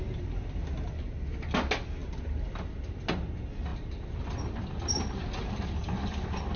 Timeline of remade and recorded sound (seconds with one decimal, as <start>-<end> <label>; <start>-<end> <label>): 0.0-6.6 recorded